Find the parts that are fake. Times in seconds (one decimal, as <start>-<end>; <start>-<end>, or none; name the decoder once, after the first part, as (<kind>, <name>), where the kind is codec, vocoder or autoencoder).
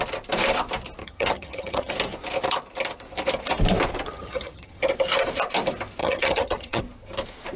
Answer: 1.0-1.9 (vocoder, HiFi-GAN); 4.1-4.8; 6.0-6.8